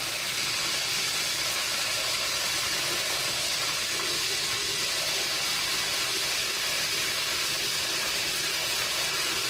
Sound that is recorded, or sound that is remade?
recorded